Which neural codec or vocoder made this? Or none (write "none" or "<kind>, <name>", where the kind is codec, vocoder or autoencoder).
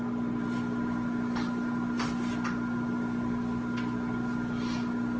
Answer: none